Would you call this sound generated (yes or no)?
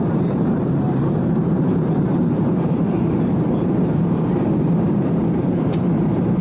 yes